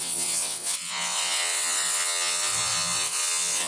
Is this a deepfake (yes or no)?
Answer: yes